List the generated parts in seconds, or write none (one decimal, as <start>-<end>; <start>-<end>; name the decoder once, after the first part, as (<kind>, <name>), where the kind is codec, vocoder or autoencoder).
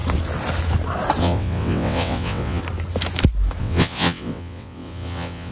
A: 1.2-2.6 (vocoder, WaveNeXt); 3.6-5.5